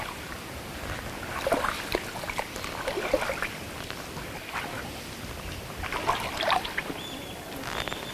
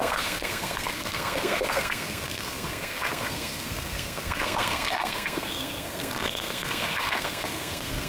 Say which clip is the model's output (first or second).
second